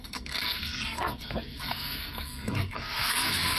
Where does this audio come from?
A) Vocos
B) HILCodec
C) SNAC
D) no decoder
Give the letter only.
C